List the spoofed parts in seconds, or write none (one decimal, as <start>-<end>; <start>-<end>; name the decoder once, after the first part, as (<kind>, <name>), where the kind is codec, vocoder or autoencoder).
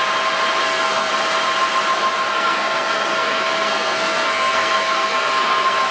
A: 0.6-1.1 (codec, SNAC); 2.3-5.9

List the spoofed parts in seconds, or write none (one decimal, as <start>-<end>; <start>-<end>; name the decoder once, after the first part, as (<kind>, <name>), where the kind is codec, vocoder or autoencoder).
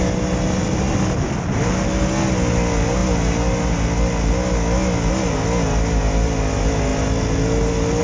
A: none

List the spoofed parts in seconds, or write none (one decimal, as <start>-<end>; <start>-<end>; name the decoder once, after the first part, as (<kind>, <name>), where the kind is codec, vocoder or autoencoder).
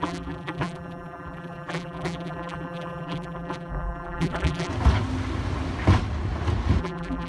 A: 0.0-4.7 (vocoder, BigVGAN v2); 6.8-7.3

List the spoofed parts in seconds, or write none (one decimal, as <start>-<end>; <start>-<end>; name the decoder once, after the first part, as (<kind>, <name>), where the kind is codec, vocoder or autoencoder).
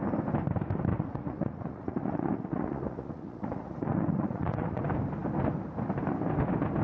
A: 0.9-4.8 (vocoder, Vocos)